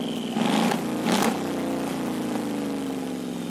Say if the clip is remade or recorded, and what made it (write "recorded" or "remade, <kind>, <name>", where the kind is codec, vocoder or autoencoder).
recorded